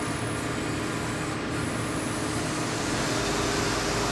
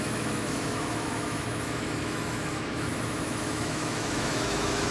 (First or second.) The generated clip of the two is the second